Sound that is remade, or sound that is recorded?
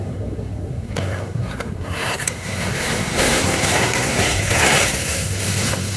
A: remade